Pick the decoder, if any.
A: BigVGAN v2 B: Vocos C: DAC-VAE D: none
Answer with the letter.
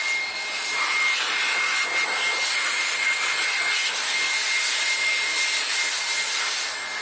D